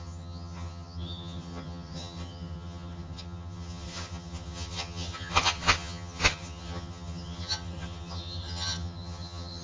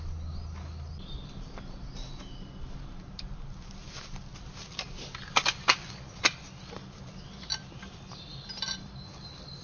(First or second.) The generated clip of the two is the first